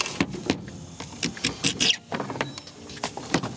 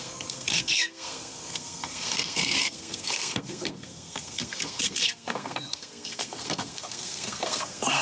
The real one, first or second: first